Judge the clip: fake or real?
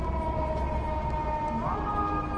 real